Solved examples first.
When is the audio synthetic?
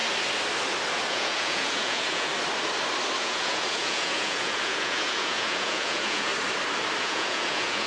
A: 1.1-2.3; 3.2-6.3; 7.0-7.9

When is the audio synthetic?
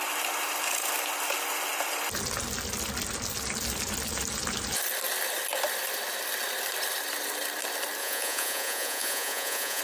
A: 8.0-9.8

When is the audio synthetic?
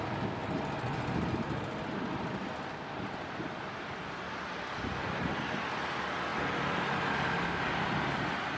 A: none